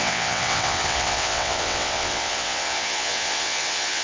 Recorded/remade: remade